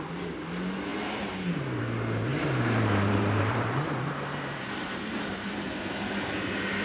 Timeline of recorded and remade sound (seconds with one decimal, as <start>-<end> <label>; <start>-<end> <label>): 0.0-0.9 recorded; 0.9-1.8 remade; 1.8-2.3 recorded; 2.3-6.8 remade